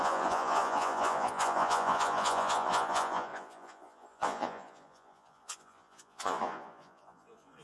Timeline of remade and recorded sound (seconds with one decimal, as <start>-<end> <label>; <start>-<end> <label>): 0.0-7.6 remade